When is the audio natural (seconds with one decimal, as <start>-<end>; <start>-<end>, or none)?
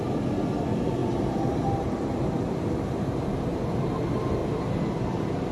0.0-1.0; 3.9-4.4